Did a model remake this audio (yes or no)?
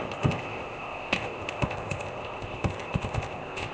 yes